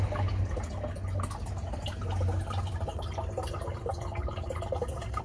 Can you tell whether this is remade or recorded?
recorded